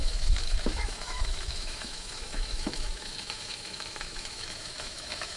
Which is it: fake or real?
fake